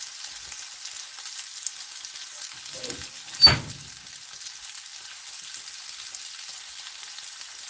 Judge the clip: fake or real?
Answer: real